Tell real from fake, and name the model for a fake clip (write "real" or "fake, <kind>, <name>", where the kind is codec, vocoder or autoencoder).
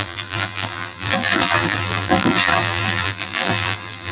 fake, vocoder, BigVGAN v2